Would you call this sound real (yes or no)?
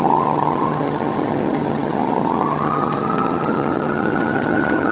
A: no